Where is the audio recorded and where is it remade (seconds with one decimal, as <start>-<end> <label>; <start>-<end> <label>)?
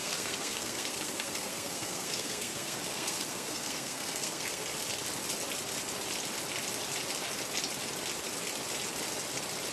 0.0-4.6 remade; 4.6-9.7 recorded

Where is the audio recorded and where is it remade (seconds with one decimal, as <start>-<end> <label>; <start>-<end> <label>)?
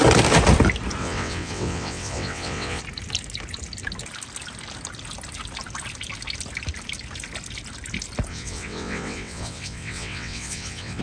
0.0-1.0 recorded; 1.0-2.8 remade; 2.8-8.3 recorded; 8.3-11.0 remade